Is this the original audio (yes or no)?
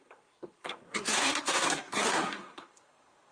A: no